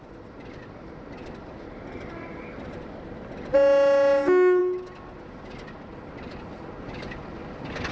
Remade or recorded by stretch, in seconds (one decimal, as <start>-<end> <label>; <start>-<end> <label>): 0.0-7.9 recorded